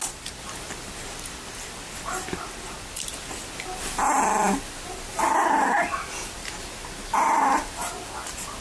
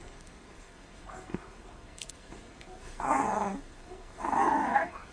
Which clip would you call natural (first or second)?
first